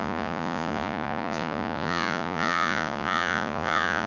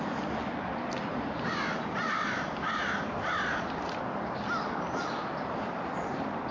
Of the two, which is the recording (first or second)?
second